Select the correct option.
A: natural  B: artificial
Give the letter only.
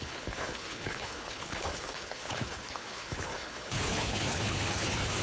B